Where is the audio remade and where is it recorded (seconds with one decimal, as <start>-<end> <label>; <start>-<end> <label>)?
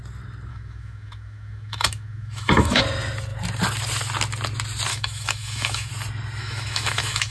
0.0-0.5 recorded; 0.5-2.8 remade; 2.8-4.9 recorded; 4.9-5.9 remade; 5.9-6.4 recorded; 6.4-7.3 remade